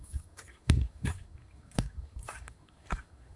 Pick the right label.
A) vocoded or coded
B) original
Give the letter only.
A